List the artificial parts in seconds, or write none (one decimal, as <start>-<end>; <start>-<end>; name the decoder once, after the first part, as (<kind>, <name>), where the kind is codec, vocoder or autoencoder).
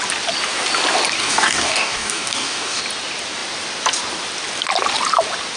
1.2-2.8 (codec, DAC)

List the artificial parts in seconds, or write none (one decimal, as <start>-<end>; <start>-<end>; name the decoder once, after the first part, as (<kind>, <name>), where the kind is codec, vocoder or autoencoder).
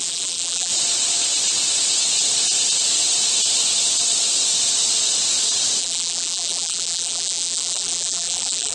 0.0-0.7 (vocoder, BigVGAN v2); 5.8-8.7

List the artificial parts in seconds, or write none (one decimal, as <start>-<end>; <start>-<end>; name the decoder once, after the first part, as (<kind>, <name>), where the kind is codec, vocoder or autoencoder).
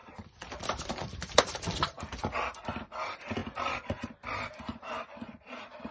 0.0-5.9 (vocoder, BigVGAN v2)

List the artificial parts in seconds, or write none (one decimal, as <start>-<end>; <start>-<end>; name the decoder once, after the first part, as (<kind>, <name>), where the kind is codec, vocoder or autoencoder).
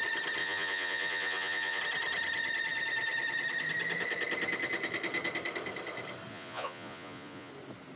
0.4-1.8 (vocoder, Vocos); 6.3-7.5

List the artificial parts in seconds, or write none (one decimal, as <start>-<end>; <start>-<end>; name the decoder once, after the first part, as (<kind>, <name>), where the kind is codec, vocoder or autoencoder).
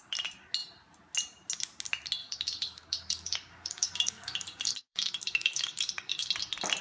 2.2-6.3 (codec, DAC)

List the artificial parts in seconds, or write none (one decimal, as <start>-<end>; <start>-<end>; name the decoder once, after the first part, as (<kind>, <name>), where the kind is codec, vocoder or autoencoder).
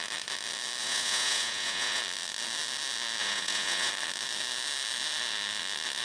0.8-2.0 (vocoder, Vocos); 3.2-3.9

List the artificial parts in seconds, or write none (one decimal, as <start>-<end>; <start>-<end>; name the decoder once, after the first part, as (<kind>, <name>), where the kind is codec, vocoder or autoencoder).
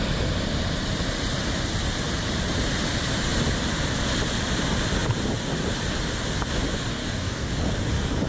6.9-7.5 (codec, DAC)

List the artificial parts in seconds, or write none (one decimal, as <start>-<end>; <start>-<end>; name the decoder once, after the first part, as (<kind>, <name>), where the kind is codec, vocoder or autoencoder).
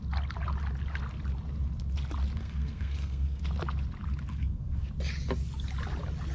2.4-3.4 (codec, SNAC); 4.3-4.9